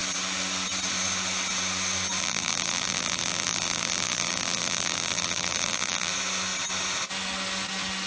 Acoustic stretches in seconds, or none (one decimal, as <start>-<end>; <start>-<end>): 0.0-2.2; 6.1-8.1